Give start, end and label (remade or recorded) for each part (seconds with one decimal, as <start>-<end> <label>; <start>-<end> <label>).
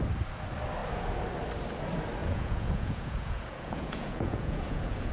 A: 0.0-2.2 recorded; 2.2-5.1 remade